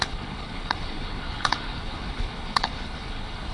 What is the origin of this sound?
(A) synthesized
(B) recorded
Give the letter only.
A